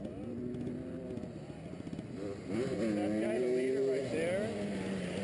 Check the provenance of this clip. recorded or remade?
recorded